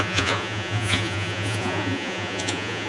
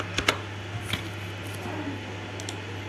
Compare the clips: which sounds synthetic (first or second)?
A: first